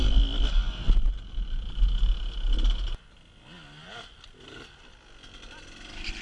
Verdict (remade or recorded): recorded